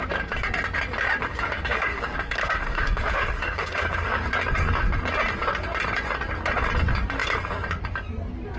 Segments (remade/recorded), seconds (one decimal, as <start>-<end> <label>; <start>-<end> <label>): 0.0-1.3 recorded; 1.3-4.3 remade; 4.3-8.6 recorded